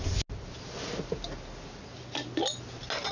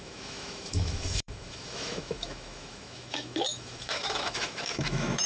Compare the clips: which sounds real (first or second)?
first